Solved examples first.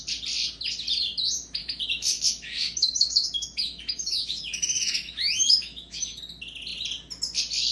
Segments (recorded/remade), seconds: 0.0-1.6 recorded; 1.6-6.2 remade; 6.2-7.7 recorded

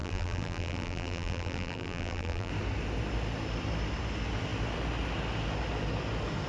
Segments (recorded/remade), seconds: 0.0-2.5 remade; 2.5-6.5 recorded

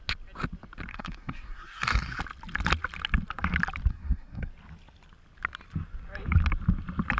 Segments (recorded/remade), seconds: 0.0-0.9 recorded; 0.9-2.2 remade; 2.2-3.9 recorded; 3.9-4.5 remade; 4.5-7.2 recorded

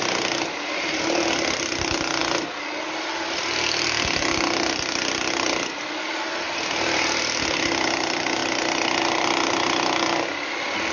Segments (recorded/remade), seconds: 0.0-10.9 recorded

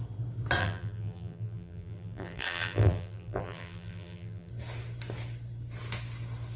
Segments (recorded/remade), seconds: 0.0-0.6 recorded; 0.6-4.5 remade; 4.5-6.6 recorded